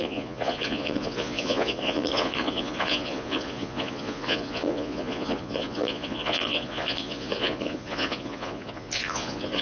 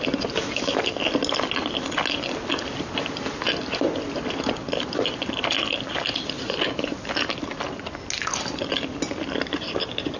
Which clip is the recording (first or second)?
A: second